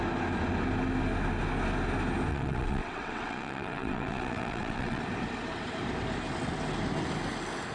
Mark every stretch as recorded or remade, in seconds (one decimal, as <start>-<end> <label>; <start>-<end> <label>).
0.0-2.3 recorded; 2.3-5.0 remade; 5.0-7.7 recorded